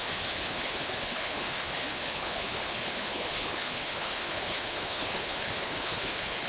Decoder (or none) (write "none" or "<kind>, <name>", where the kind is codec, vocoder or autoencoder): codec, HILCodec